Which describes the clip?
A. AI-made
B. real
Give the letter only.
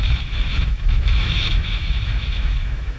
A